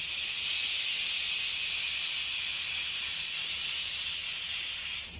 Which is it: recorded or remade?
recorded